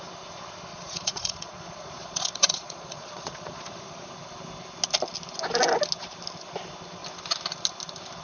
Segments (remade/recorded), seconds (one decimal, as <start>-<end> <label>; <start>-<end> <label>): 0.0-0.7 recorded; 0.7-4.1 remade; 4.1-8.2 recorded

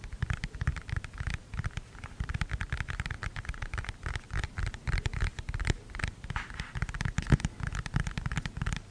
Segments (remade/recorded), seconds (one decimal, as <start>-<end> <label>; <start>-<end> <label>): 0.0-8.9 recorded